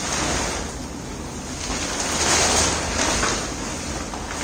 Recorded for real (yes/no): yes